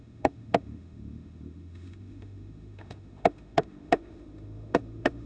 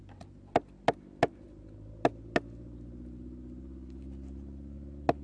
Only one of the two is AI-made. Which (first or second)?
first